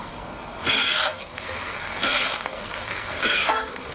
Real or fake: fake